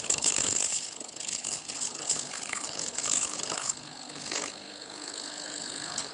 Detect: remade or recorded remade